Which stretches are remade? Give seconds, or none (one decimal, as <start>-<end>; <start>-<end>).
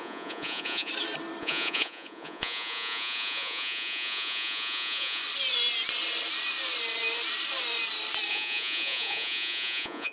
0.0-0.9; 1.4-5.2; 8.3-10.1